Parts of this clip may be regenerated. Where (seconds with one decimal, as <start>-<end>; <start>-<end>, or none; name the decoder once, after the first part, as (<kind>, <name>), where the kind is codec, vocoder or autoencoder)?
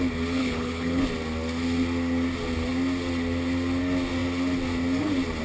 0.4-1.0 (codec, HILCodec)